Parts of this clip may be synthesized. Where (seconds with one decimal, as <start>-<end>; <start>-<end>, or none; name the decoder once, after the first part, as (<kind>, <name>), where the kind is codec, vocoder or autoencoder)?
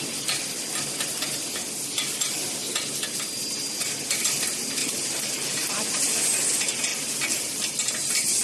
4.8-5.7 (vocoder, BigVGAN v2)